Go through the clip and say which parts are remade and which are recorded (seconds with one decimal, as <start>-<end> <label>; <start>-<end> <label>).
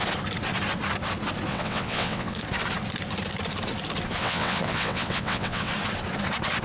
0.0-1.5 recorded; 1.5-2.4 remade; 2.4-4.2 recorded; 4.2-5.7 remade; 5.7-6.6 recorded